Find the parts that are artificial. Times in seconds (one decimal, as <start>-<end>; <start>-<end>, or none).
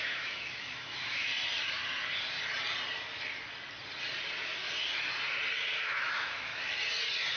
0.0-1.3; 5.7-6.5